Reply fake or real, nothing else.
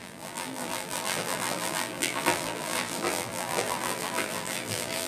fake